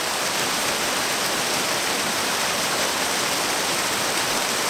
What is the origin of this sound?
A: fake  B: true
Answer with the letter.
B